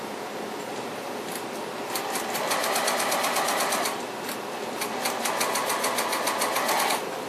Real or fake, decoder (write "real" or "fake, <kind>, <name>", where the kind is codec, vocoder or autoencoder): real